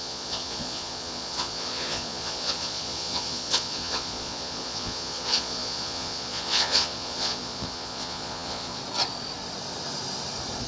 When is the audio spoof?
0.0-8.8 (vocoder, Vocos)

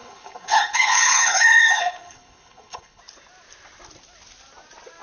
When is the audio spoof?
0.0-3.0 (codec, HILCodec)

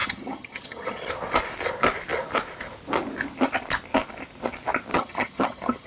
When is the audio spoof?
0.0-1.1 (vocoder, HiFi-GAN); 4.9-5.9

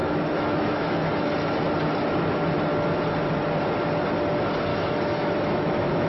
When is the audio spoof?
0.0-1.1 (autoencoder, DAC-VAE); 4.7-6.1